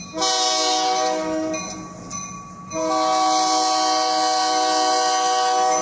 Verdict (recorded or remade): recorded